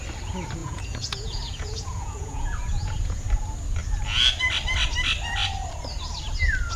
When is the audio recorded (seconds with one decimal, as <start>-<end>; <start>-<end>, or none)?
0.0-0.6; 3.2-6.8